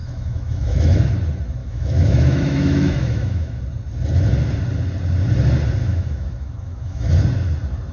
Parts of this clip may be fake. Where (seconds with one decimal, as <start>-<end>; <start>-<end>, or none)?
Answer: 0.0-1.1; 1.6-3.6; 5.8-7.1

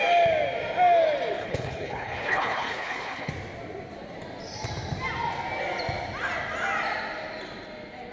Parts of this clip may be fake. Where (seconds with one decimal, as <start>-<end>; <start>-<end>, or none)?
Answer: 1.4-3.3

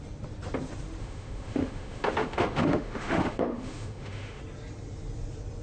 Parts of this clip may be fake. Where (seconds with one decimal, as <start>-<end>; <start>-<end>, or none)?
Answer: 1.0-4.4

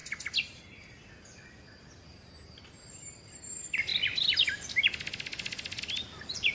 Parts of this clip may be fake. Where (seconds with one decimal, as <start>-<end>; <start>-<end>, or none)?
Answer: 2.9-6.5

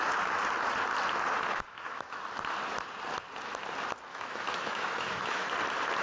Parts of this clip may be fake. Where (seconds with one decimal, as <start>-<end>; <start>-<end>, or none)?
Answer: 1.5-2.2; 4.1-5.5

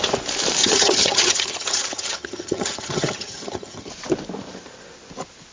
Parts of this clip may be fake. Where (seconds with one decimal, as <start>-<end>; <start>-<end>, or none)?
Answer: 0.6-3.9

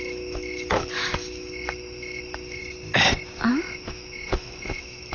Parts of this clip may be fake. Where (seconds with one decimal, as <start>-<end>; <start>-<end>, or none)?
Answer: 0.0-2.6; 3.5-5.1

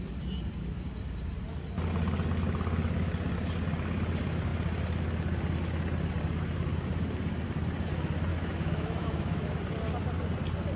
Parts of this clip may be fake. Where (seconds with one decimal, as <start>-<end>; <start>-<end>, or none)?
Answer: 8.3-9.6